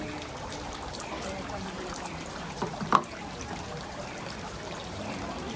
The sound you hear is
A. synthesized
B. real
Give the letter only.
A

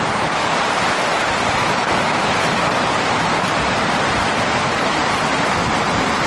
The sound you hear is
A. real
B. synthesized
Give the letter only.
B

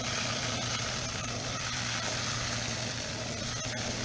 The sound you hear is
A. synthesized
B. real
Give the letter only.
A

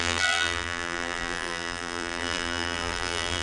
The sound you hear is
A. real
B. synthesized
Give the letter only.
B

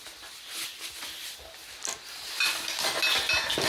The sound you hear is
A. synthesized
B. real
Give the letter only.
B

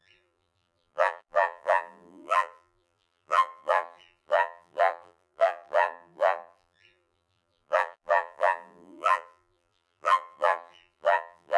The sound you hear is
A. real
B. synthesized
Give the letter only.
B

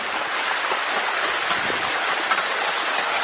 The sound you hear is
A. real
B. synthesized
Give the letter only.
A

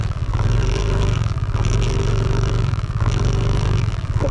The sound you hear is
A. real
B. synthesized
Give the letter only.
B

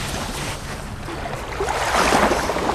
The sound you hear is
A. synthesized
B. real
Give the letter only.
B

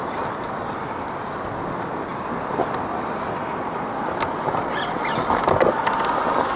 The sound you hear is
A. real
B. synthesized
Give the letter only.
A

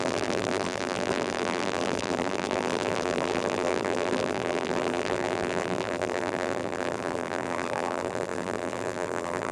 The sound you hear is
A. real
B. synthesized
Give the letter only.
B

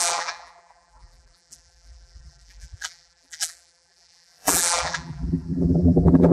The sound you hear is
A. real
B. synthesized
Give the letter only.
B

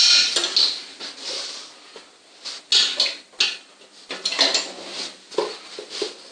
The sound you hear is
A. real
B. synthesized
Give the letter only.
A